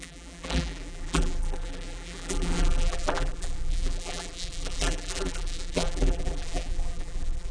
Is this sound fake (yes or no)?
yes